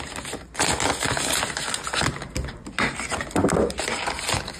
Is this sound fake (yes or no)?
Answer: no